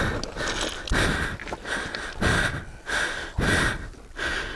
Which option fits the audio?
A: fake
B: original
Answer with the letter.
B